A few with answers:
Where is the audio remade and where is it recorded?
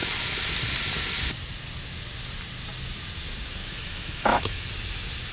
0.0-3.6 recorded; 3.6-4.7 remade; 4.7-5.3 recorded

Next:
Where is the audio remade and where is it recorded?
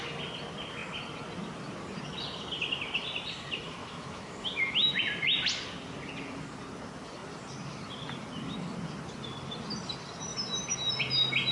0.0-3.8 recorded; 3.8-5.0 remade; 5.0-11.5 recorded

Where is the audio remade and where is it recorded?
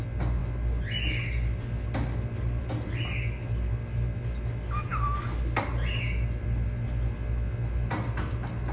0.0-8.7 recorded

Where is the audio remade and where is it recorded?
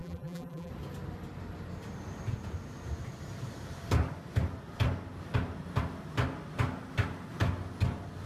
0.0-0.7 remade; 0.7-8.3 recorded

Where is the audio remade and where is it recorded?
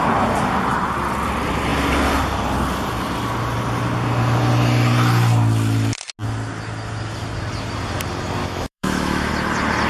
0.0-8.4 recorded; 8.4-9.3 remade; 9.3-9.9 recorded